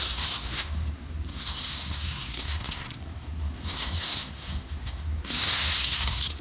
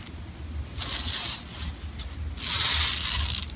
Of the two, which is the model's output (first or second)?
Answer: first